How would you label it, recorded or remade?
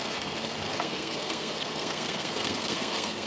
remade